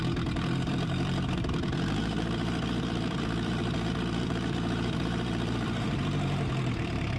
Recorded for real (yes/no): no